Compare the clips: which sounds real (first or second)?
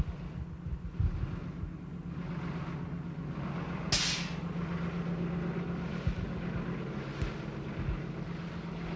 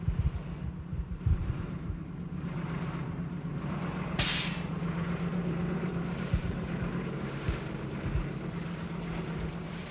first